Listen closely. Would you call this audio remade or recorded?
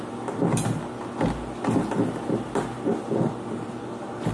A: recorded